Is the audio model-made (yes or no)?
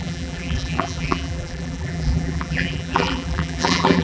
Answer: yes